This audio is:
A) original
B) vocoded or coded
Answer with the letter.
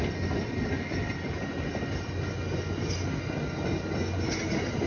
A